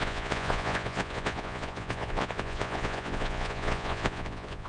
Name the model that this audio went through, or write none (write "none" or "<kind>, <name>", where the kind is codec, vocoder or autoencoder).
vocoder, Vocos